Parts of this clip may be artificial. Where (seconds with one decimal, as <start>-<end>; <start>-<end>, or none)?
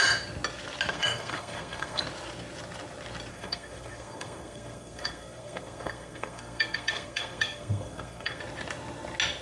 0.9-2.0; 3.3-8.4